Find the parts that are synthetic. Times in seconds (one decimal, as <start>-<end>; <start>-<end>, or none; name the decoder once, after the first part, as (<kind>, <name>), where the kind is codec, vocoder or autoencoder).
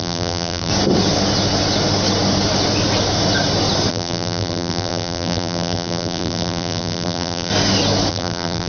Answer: 0.0-0.7 (vocoder, BigVGAN v2); 3.9-7.5; 8.1-8.7